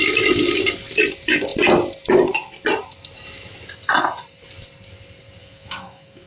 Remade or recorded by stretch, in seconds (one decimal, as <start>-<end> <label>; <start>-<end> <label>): 0.0-5.4 recorded; 5.4-6.3 remade